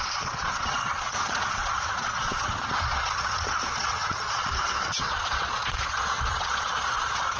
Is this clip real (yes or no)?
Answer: no